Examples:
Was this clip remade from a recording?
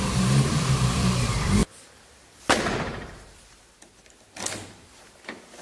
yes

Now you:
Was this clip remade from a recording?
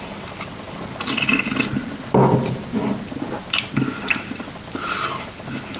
no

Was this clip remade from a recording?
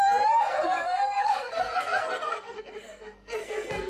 yes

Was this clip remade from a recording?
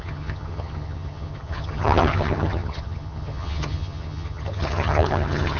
yes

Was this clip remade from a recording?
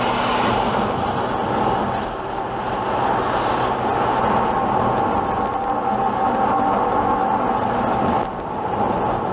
no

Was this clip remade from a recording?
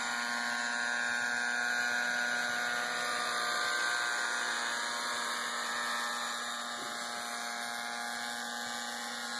no